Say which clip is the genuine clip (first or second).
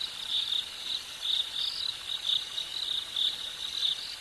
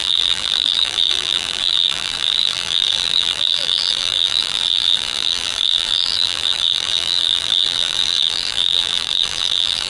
first